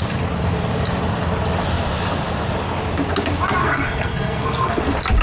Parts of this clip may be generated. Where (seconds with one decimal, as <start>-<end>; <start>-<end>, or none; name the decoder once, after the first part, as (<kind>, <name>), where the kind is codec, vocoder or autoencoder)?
3.6-4.8 (codec, SNAC)